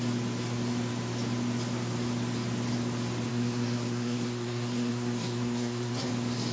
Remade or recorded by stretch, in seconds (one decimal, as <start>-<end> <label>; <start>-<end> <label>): 0.0-3.3 recorded; 3.3-6.1 remade; 6.1-6.5 recorded